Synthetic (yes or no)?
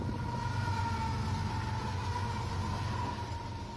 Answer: no